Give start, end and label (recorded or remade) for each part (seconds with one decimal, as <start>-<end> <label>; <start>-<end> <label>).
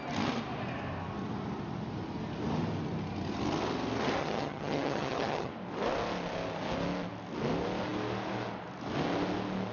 0.0-4.2 recorded; 4.2-5.5 remade; 5.5-9.7 recorded